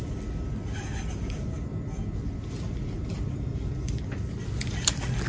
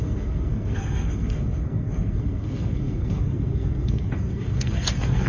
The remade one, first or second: second